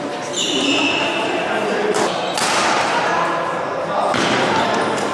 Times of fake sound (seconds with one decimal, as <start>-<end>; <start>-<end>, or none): none